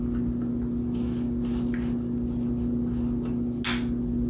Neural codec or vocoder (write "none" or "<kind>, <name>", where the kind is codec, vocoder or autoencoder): none